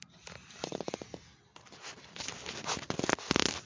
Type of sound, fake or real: real